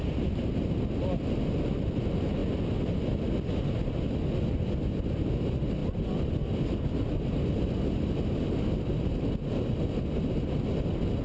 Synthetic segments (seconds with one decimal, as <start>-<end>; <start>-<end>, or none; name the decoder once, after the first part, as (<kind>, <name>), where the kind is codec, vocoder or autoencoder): none